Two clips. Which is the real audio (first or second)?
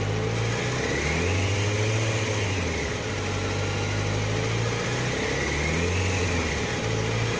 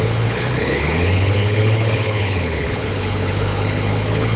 first